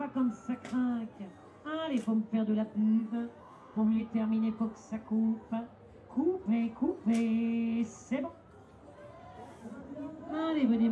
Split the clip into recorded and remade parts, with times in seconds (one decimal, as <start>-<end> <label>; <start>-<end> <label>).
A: 0.0-3.4 recorded; 3.4-4.0 remade; 4.0-10.9 recorded